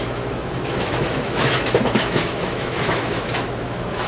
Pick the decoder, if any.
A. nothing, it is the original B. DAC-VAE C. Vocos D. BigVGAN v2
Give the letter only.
B